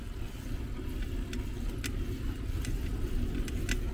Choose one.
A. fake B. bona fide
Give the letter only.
B